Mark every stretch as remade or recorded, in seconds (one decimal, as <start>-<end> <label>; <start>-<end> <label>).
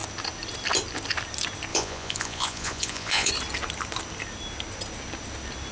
0.0-1.7 recorded; 1.7-3.3 remade; 3.3-5.7 recorded